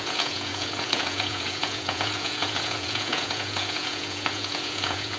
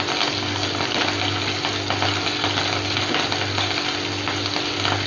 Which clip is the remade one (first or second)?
first